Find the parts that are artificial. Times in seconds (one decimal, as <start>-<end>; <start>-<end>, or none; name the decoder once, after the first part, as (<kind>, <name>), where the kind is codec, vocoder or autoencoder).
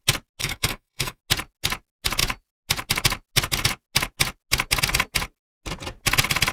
0.4-1.2 (codec, SNAC)